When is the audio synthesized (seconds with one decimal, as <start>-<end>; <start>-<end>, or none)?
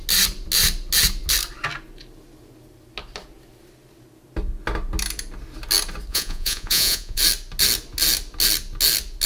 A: 6.1-7.2